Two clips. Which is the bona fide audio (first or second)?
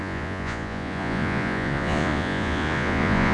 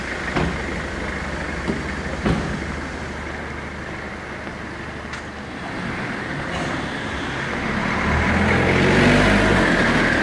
second